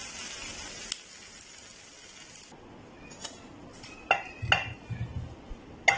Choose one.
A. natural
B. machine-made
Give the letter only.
A